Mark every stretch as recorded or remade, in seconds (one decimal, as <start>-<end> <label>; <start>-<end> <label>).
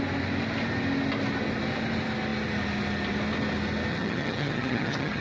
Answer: 0.0-3.9 recorded; 3.9-5.2 remade